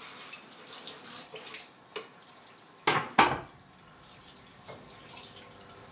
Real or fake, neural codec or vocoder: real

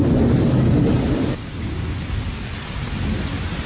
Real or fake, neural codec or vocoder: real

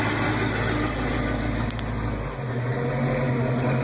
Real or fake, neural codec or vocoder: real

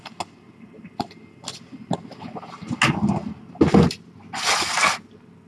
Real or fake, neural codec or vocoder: real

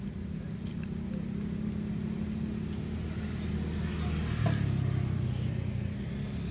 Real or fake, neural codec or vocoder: real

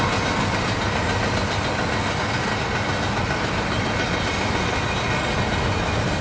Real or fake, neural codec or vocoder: real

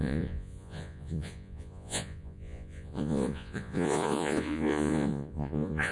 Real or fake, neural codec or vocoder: fake, vocoder, Vocos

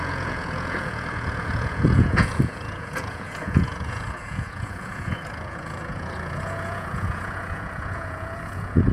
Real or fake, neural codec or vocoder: fake, vocoder, Vocos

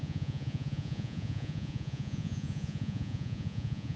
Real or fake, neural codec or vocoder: fake, vocoder, Vocos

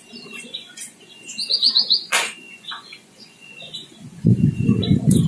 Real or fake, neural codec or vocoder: fake, vocoder, Vocos